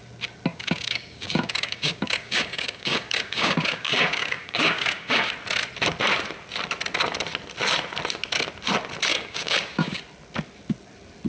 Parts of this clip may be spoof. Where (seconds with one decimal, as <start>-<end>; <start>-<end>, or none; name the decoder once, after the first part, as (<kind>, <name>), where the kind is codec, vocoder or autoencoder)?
0.5-5.3 (codec, DAC); 9.1-10.0